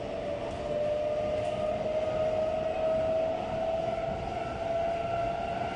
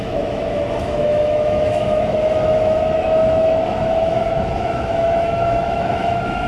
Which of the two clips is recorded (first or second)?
first